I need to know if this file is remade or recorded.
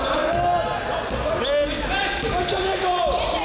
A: recorded